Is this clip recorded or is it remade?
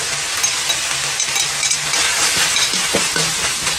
recorded